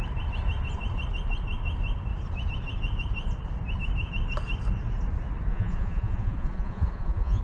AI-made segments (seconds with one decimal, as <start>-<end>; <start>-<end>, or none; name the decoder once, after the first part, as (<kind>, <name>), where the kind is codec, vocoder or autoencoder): 5.5-7.4 (vocoder, Vocos)

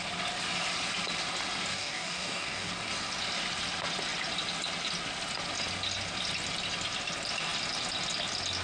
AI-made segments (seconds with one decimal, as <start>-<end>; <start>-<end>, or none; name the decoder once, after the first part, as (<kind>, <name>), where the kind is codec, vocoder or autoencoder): 1.7-2.7 (codec, DAC)

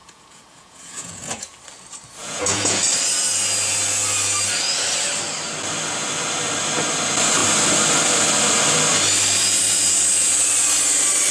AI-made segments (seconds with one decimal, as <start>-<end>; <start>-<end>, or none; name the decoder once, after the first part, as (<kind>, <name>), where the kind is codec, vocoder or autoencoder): 0.0-1.5 (vocoder, Vocos); 2.2-2.8

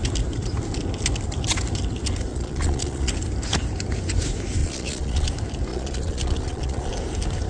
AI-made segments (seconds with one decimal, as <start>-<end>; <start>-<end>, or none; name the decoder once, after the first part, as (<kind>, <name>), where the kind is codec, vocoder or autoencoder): 2.3-3.1 (vocoder, Vocos); 4.6-5.3; 5.7-6.9

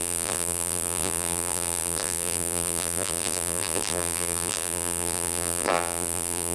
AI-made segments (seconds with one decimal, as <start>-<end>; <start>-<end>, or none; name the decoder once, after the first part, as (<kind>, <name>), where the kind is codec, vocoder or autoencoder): 0.0-6.5 (vocoder, BigVGAN v2)

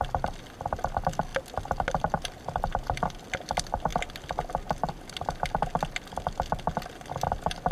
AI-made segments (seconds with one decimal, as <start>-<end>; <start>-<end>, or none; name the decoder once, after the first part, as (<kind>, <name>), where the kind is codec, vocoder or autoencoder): none

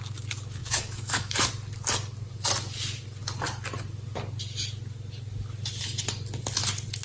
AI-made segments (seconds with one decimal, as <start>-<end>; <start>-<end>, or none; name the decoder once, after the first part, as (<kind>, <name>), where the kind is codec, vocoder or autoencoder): 0.6-1.5 (autoencoder, DAC-VAE)

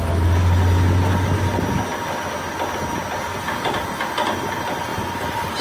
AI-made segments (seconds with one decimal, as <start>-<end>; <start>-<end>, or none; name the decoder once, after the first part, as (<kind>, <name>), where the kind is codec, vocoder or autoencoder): none